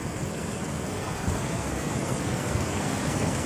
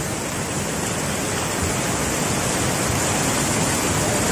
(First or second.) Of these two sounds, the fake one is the first